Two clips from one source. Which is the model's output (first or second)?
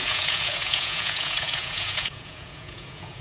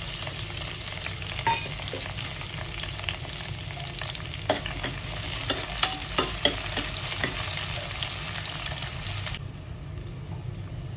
first